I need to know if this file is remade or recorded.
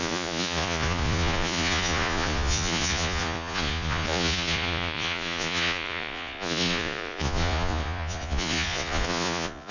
remade